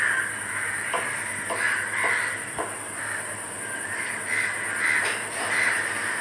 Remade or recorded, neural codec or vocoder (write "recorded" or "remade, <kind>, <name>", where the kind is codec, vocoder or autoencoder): recorded